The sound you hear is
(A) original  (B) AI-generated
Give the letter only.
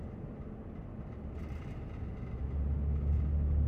A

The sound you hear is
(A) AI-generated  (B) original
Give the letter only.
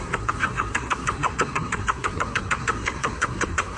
A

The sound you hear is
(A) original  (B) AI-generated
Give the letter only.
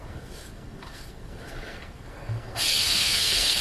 B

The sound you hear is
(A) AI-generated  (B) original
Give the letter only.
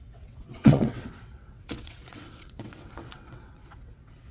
A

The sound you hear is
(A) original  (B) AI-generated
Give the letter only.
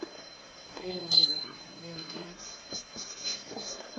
B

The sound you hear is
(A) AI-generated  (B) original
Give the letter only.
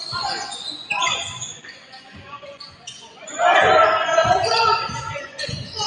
A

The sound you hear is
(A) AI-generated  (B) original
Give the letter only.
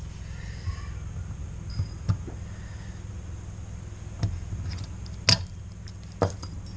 B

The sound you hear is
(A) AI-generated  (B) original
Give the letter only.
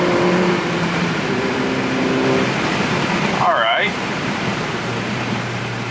A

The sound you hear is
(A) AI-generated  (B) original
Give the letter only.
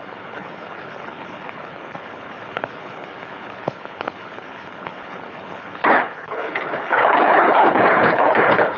A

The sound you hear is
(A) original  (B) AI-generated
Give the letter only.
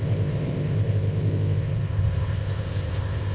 B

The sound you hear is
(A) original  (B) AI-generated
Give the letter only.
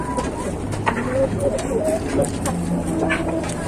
A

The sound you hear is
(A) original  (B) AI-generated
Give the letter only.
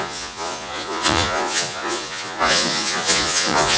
B